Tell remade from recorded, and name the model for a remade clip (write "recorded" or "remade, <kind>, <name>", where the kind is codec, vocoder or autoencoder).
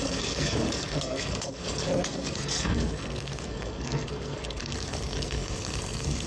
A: remade, codec, SNAC